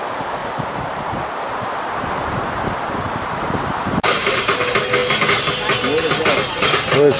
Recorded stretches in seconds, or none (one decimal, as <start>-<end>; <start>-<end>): 0.0-0.4; 4.6-7.2